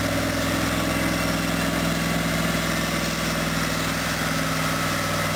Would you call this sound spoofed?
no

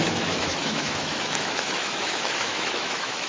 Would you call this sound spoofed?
yes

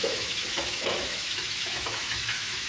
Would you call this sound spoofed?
yes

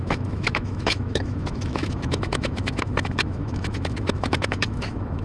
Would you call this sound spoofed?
yes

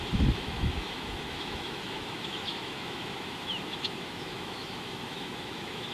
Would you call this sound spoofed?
yes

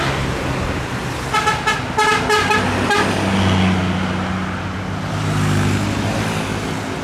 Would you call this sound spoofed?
no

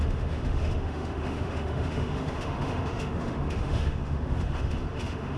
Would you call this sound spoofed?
yes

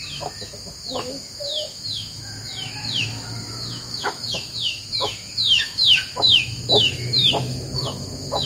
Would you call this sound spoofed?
yes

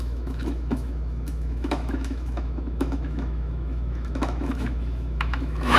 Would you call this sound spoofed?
yes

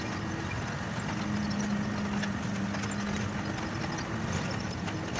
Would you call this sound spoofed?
no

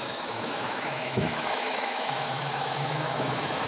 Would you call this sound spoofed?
yes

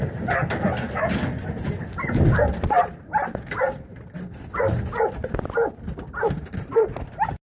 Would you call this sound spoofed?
no